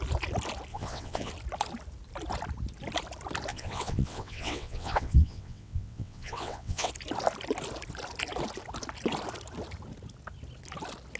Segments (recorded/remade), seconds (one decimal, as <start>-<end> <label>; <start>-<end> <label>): 0.0-0.7 recorded; 0.7-1.3 remade; 1.3-3.5 recorded; 3.5-6.9 remade; 6.9-11.2 recorded